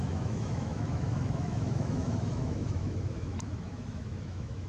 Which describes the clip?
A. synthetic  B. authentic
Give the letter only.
A